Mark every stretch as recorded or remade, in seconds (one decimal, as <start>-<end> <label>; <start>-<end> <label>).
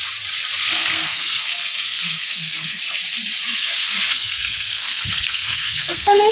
0.0-0.6 recorded; 0.6-2.8 remade; 2.8-3.5 recorded; 3.5-6.3 remade